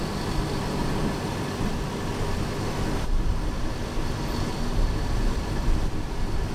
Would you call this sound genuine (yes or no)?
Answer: yes